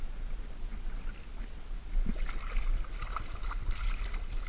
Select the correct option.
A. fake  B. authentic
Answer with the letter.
B